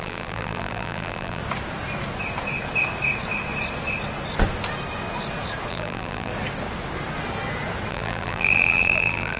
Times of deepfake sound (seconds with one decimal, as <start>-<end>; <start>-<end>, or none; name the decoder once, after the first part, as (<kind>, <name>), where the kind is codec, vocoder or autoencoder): 0.0-1.4 (vocoder, BigVGAN v2); 5.7-6.3; 7.9-9.4